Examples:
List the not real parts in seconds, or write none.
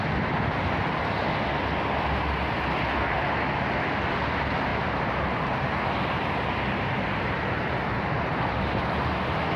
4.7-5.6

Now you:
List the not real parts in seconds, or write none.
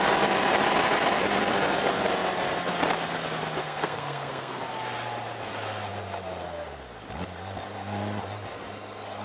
3.6-4.6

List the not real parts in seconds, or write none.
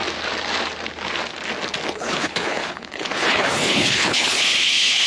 1.9-5.1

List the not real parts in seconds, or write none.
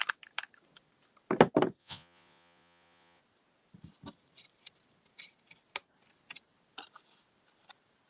1.8-3.2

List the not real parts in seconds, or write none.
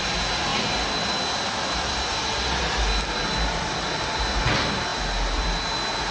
none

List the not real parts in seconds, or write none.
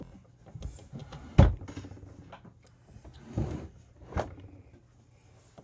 none